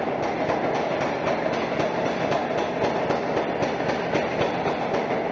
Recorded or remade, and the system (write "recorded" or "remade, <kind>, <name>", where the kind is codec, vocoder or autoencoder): recorded